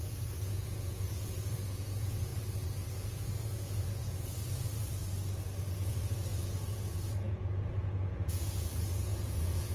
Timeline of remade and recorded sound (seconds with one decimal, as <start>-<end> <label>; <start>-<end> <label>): 0.0-2.3 remade; 2.3-2.9 recorded; 2.9-4.7 remade; 4.7-5.8 recorded; 5.8-9.7 remade